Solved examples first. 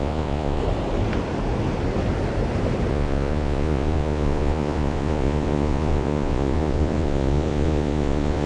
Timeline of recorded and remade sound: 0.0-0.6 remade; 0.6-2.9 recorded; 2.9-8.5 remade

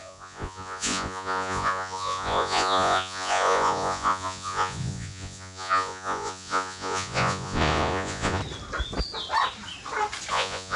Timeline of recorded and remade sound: 0.0-8.4 remade; 8.4-10.3 recorded; 10.3-10.8 remade